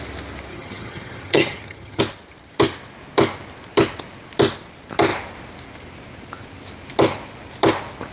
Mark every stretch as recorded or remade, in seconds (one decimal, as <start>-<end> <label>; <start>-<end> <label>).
0.0-0.5 recorded; 0.5-2.0 remade; 2.0-8.1 recorded